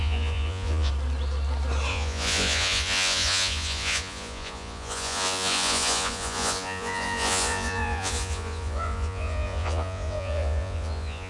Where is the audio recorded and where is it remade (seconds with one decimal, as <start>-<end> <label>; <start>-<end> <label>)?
0.0-0.9 remade; 0.9-1.9 recorded; 1.9-11.3 remade